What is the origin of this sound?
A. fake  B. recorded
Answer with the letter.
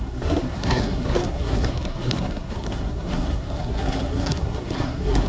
A